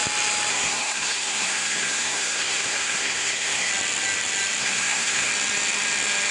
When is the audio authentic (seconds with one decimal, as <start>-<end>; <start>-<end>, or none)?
0.0-0.5; 3.7-4.6; 5.3-6.3